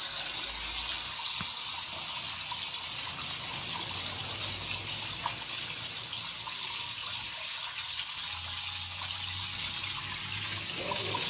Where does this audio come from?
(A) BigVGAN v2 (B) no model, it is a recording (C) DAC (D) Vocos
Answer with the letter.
B